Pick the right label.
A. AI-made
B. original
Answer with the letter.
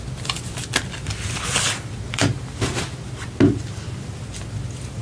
B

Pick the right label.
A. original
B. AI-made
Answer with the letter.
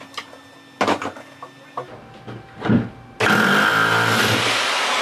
A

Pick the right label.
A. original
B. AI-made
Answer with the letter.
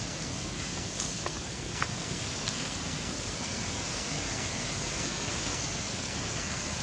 B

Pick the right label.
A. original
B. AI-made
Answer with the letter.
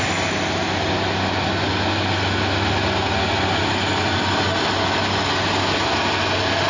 A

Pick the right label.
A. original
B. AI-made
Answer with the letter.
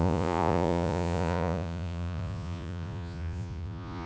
B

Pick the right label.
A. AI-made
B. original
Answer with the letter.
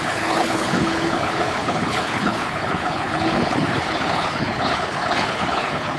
A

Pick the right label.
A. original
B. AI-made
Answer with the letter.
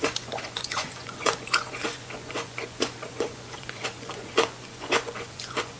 B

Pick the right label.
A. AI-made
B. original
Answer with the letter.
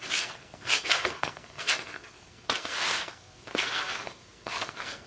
A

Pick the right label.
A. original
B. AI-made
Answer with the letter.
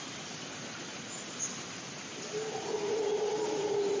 A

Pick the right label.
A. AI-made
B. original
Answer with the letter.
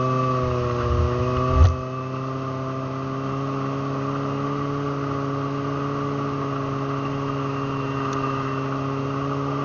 B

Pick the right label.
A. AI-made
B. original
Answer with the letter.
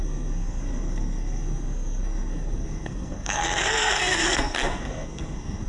A